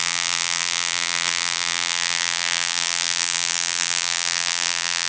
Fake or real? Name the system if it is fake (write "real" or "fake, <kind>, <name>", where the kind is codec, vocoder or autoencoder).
fake, vocoder, BigVGAN v2